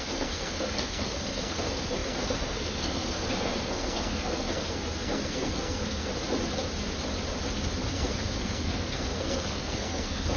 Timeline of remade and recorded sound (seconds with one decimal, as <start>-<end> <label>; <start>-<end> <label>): 0.0-6.1 remade; 6.1-7.9 recorded; 7.9-10.4 remade